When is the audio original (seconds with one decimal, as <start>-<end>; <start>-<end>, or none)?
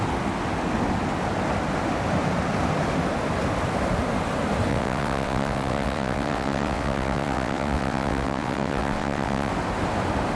0.0-4.7; 9.5-10.3